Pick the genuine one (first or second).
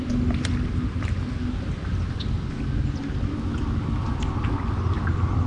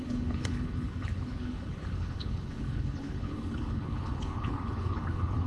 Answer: first